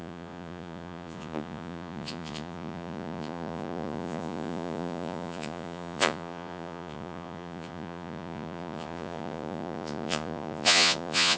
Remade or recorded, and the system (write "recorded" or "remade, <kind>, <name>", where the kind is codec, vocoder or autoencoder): remade, vocoder, Vocos